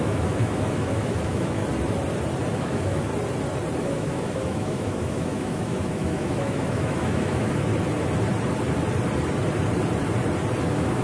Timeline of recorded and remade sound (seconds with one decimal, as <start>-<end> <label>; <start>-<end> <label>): 0.0-1.6 remade; 1.6-2.5 recorded; 2.5-3.1 remade; 3.1-3.8 recorded; 3.8-7.7 remade; 7.7-10.6 recorded; 10.6-11.0 remade